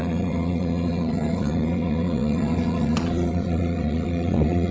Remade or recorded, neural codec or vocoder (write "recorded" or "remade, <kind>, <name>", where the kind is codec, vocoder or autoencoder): remade, vocoder, Vocos